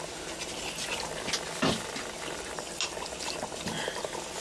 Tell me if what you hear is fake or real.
real